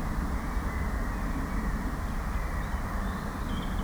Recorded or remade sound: recorded